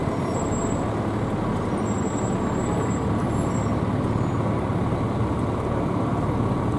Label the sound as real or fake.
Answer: real